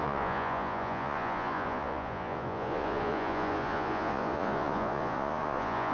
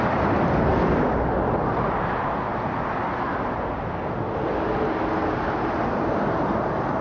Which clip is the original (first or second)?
second